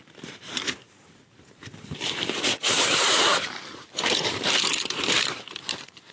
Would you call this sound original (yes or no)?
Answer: no